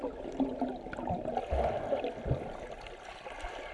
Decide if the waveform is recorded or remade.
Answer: recorded